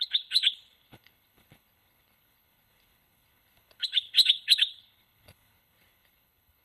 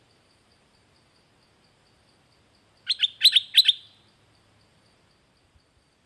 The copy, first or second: first